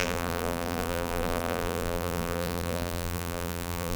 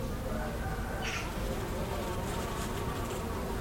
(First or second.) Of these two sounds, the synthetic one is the first